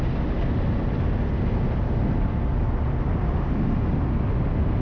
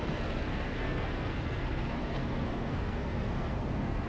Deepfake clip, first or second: second